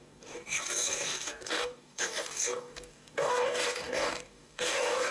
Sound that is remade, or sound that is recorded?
remade